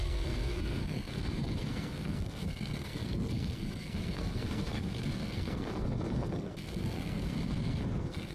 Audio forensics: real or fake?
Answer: fake